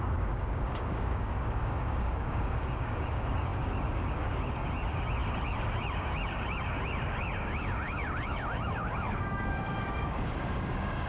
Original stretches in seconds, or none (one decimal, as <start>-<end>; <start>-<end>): none